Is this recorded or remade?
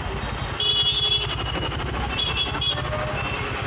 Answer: recorded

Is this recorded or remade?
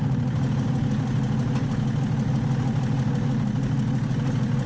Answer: recorded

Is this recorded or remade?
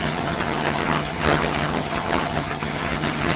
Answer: remade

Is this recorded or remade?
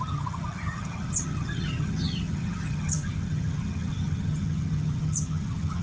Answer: remade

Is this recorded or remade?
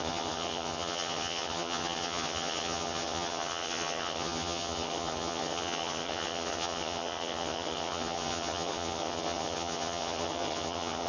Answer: remade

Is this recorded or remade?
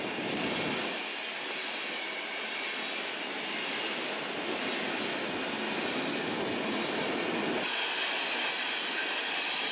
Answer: recorded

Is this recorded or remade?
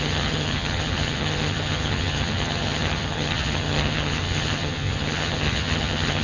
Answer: remade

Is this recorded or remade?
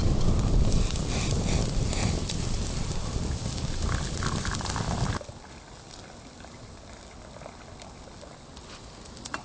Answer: recorded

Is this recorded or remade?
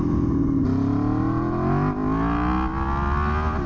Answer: recorded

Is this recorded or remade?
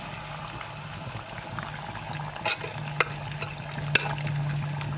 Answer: recorded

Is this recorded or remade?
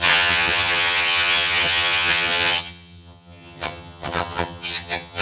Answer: remade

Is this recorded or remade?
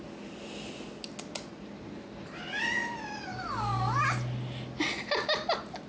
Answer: recorded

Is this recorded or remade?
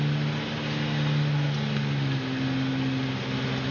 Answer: recorded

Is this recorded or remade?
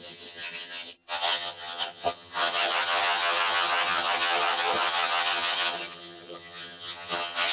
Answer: remade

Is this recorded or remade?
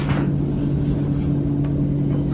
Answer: recorded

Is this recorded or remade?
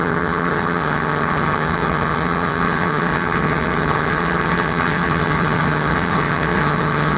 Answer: remade